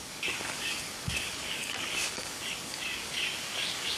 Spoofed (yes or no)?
yes